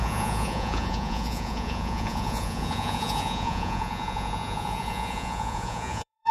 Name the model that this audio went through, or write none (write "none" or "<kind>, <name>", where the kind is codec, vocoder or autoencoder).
vocoder, Vocos